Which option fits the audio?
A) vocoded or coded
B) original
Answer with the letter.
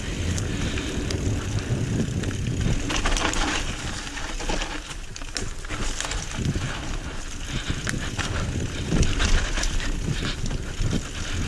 B